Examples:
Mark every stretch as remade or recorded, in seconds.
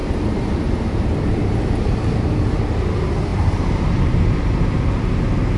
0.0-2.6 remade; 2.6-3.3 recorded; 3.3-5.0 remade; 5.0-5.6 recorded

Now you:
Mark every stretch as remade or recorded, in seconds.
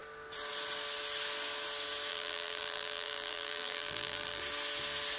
0.0-2.1 recorded; 2.1-4.4 remade; 4.4-5.2 recorded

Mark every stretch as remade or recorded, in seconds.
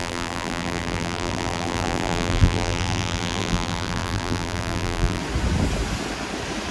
0.0-5.2 remade; 5.2-6.7 recorded